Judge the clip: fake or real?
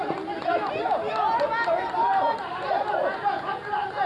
real